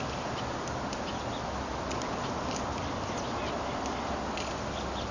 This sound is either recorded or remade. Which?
recorded